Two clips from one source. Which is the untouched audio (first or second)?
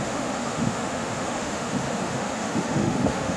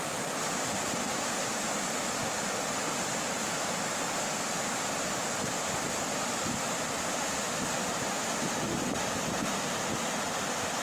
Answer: second